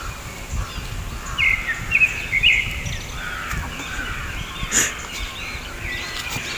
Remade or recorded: recorded